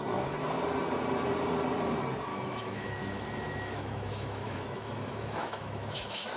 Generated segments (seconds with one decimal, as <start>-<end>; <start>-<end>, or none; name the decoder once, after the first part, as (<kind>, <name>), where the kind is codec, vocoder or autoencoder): 2.3-6.4 (autoencoder, DAC-VAE)